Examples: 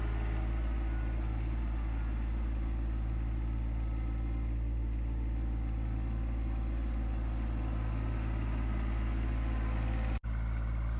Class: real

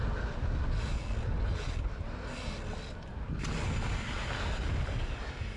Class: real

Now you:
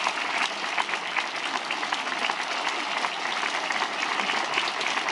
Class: real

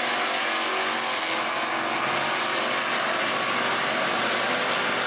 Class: real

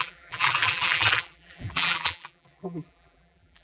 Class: fake